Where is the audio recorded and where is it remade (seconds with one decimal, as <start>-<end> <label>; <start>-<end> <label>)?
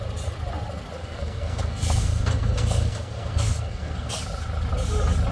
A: 0.0-1.0 recorded; 1.0-4.2 remade; 4.2-5.3 recorded